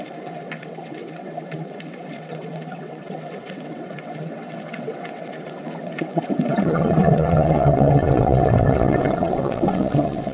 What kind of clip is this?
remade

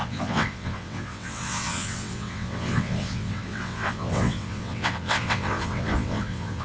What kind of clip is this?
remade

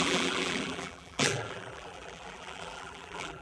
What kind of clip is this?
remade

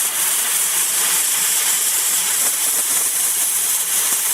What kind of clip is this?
remade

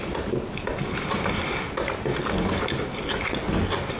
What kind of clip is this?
recorded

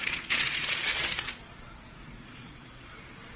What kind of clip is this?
remade